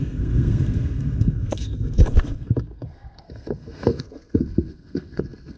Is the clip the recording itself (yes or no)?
no